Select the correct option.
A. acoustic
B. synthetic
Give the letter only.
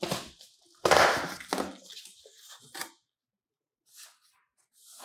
A